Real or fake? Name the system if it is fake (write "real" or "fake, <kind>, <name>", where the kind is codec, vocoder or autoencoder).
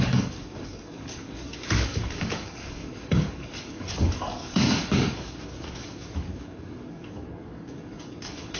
fake, codec, DAC